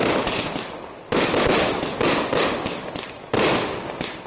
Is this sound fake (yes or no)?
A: no